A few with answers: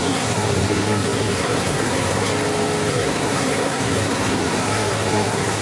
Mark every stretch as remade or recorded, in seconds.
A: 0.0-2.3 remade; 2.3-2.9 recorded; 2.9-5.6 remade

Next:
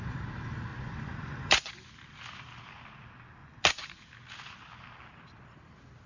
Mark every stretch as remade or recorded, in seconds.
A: 0.0-0.7 recorded; 0.7-1.7 remade; 1.7-3.4 recorded; 3.4-3.9 remade; 3.9-6.1 recorded

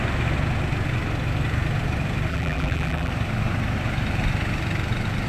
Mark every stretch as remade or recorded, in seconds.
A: 0.0-2.3 recorded; 2.3-3.1 remade; 3.1-5.3 recorded

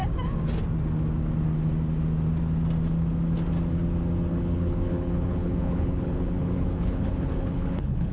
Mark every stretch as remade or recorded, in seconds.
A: 0.0-4.3 recorded; 4.3-8.1 remade